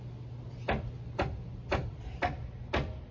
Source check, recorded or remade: recorded